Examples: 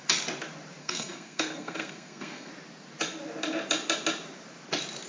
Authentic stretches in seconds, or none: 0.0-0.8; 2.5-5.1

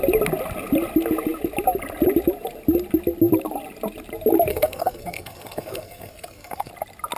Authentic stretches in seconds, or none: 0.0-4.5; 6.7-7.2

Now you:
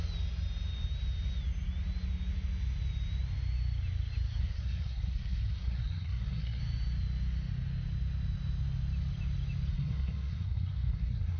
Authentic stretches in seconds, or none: 0.0-4.4; 6.6-9.7